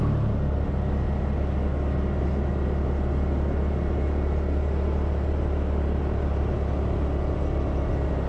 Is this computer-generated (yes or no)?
no